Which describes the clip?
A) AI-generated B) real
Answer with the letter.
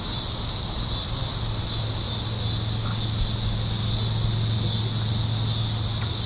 B